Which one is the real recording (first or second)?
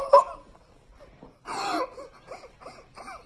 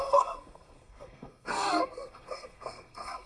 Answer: first